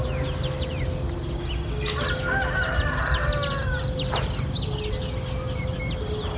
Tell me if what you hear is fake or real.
real